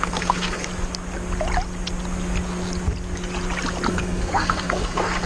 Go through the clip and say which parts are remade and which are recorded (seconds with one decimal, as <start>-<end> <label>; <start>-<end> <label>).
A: 0.0-0.7 remade; 0.7-3.9 recorded; 3.9-5.3 remade